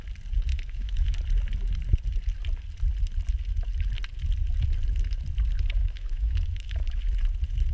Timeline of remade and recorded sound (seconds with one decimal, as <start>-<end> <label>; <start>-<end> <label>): 0.0-0.5 recorded; 0.5-1.2 remade; 1.2-5.8 recorded; 5.8-7.0 remade; 7.0-7.7 recorded